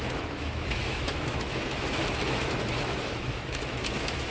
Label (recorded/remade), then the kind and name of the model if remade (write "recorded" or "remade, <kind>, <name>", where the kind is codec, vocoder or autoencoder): remade, autoencoder, DAC-VAE